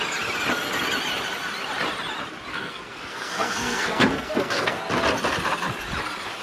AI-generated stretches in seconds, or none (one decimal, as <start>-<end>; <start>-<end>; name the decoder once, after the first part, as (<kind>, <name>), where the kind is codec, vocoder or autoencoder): 2.5-4.8 (codec, SNAC)